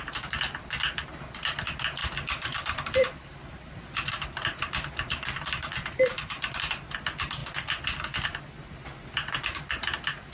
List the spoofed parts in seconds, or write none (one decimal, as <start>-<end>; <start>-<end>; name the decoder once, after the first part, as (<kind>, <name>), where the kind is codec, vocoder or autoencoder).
2.0-6.6 (vocoder, BigVGAN v2); 7.4-8.4

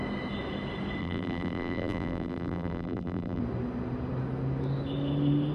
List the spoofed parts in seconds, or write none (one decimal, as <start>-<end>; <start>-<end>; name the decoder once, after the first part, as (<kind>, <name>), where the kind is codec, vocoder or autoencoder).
1.0-3.4 (vocoder, BigVGAN v2)